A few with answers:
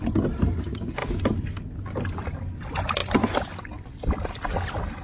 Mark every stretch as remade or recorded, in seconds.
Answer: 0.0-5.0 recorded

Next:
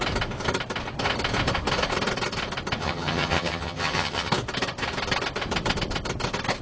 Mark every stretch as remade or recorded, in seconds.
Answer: 0.0-2.8 recorded; 2.8-4.3 remade; 4.3-6.6 recorded